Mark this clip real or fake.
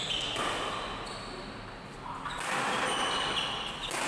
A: real